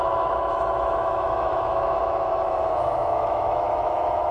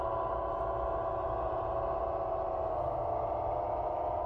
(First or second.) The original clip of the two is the second